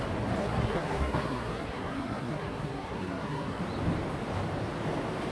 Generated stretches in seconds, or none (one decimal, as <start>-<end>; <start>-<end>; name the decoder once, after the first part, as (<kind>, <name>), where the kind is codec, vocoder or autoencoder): 0.4-3.6 (codec, SNAC)